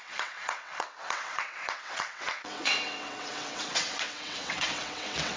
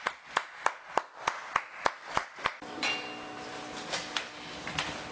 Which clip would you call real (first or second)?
second